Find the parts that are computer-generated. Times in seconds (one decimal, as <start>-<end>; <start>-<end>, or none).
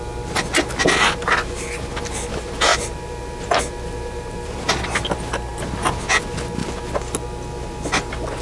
2.7-4.7; 5.5-6.0